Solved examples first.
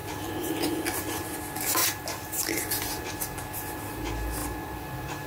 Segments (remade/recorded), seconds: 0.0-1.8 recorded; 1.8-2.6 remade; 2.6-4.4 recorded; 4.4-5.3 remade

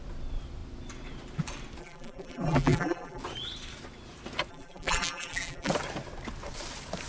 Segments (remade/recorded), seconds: 0.0-1.8 recorded; 1.8-3.2 remade; 3.2-4.5 recorded; 4.5-5.7 remade; 5.7-7.1 recorded

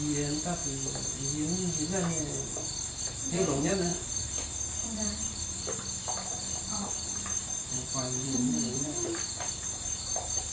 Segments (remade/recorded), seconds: 0.0-0.6 remade; 0.6-3.3 recorded; 3.3-10.5 remade

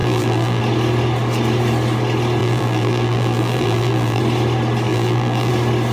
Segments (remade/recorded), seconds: 0.0-0.6 remade; 0.6-2.4 recorded; 2.4-4.2 remade; 4.2-4.9 recorded; 4.9-5.5 remade; 5.5-5.9 recorded

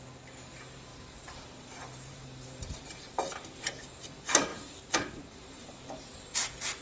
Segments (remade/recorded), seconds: 0.0-0.9 recorded; 0.9-3.7 remade; 3.7-4.5 recorded; 4.5-5.7 remade; 5.7-6.8 recorded